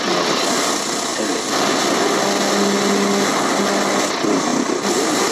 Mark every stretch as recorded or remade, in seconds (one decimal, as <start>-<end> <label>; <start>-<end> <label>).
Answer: 0.0-5.3 recorded